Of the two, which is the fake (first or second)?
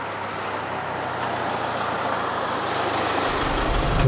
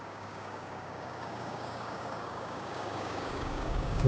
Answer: second